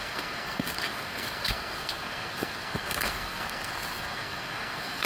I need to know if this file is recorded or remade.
remade